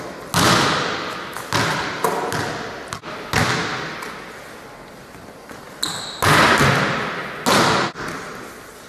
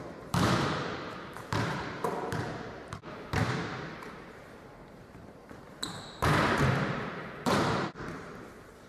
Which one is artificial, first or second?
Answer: second